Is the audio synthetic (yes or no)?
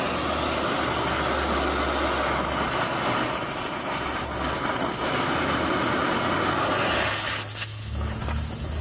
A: no